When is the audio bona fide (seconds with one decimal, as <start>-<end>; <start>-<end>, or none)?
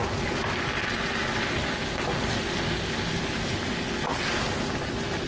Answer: 0.0-5.3